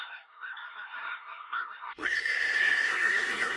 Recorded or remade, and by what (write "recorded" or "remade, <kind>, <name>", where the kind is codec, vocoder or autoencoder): remade, codec, SNAC